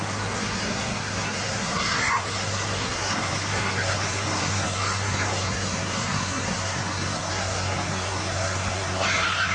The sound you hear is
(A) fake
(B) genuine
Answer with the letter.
A